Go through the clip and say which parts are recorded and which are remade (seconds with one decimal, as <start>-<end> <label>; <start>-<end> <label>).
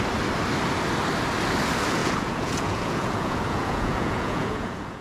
0.0-2.0 recorded; 2.0-5.0 remade